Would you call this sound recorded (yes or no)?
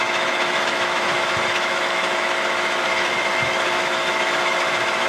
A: no